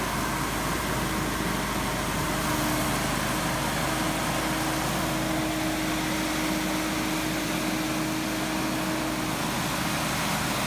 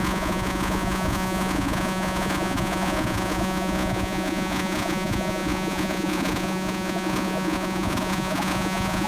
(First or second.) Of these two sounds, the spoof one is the second